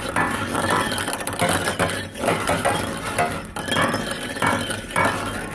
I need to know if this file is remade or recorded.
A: recorded